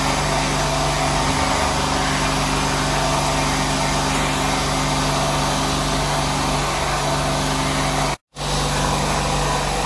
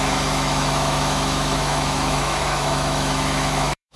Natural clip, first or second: first